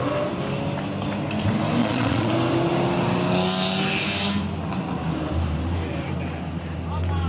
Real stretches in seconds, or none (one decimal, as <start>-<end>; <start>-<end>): 0.0-1.8; 2.3-7.3